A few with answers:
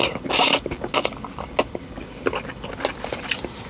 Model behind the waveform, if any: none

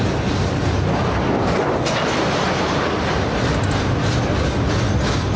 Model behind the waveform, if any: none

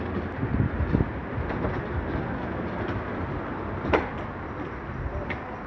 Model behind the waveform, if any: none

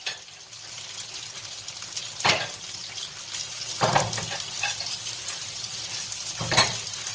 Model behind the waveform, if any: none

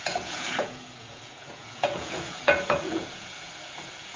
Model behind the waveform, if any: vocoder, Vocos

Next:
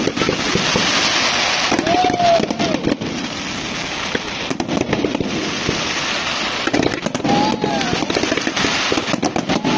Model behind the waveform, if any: none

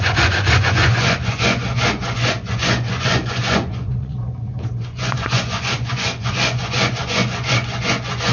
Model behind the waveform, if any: vocoder, Vocos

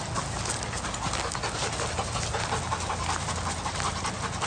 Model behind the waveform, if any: none